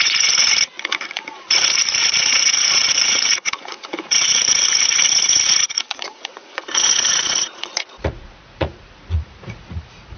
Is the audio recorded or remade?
remade